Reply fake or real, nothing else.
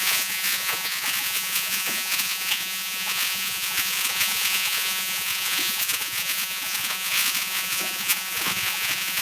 fake